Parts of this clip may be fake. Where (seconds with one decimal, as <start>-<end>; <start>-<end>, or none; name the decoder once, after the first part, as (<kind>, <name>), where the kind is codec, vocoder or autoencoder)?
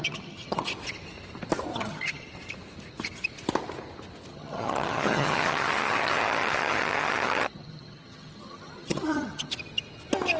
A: 0.0-0.7 (vocoder, HiFi-GAN); 1.7-2.3; 4.3-9.5